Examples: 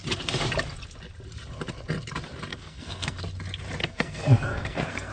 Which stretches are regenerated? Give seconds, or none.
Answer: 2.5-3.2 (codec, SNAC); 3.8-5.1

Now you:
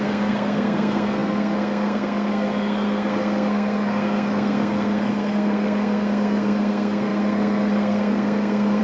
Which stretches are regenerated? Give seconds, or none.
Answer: 0.0-8.8 (codec, SNAC)